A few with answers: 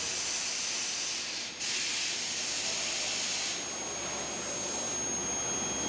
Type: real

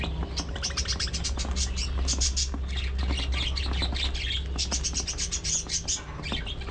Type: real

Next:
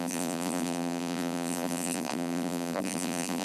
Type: fake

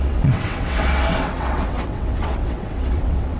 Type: fake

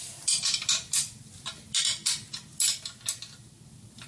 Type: real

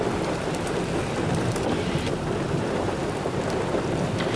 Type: real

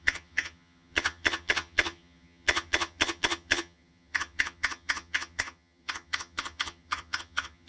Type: fake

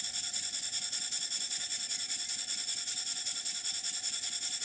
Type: fake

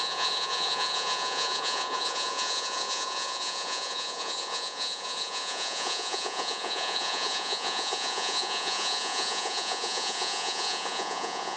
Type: fake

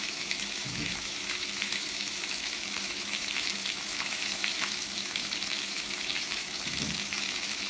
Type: fake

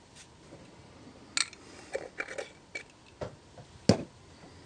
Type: real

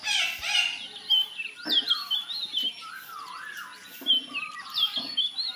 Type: real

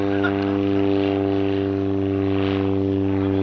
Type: real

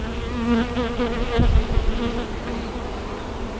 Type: real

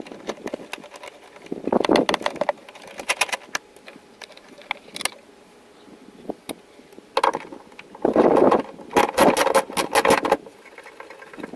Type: real